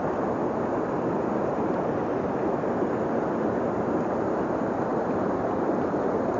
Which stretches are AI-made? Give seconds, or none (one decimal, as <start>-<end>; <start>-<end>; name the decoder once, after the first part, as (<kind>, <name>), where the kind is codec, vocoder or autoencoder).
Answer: none